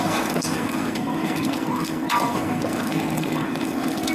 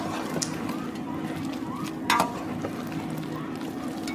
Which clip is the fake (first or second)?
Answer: first